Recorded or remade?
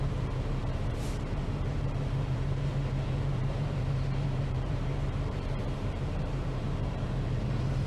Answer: remade